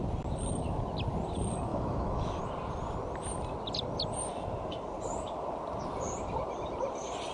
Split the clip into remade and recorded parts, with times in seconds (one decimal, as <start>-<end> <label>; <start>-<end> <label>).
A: 0.0-1.7 recorded; 1.7-2.4 remade; 2.4-7.3 recorded